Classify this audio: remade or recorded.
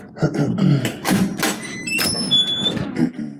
recorded